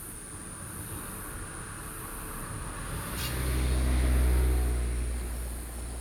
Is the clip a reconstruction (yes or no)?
no